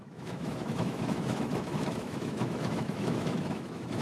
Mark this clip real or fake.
fake